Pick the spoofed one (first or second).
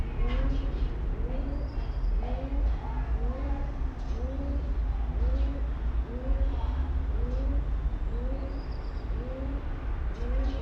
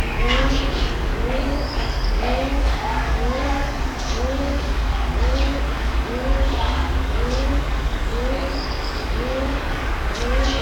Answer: second